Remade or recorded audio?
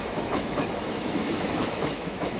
remade